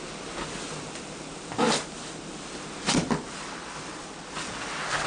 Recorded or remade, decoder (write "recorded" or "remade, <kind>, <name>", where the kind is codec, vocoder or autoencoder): recorded